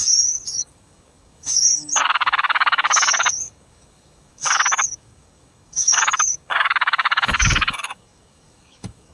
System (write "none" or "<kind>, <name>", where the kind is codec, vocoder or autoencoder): codec, DAC